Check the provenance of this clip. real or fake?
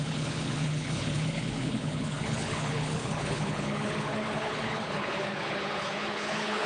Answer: fake